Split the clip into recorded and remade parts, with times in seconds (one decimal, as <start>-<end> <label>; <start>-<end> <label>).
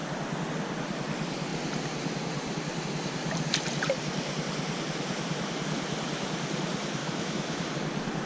0.0-7.0 recorded; 7.0-7.7 remade; 7.7-8.3 recorded